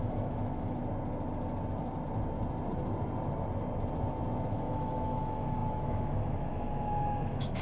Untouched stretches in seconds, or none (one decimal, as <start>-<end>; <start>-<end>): 0.8-4.5